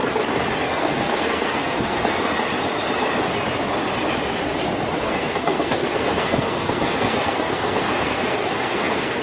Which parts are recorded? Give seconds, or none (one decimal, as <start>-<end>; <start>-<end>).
0.0-0.6; 2.3-5.0

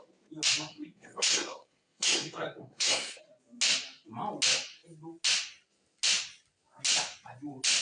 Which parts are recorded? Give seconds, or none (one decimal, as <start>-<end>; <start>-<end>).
0.0-0.7; 3.2-7.8

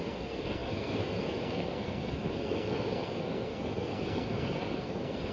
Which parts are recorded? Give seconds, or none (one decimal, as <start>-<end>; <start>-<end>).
none